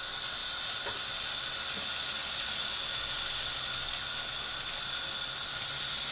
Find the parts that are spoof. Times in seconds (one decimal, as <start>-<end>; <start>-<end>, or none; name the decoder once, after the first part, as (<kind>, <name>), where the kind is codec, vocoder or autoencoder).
none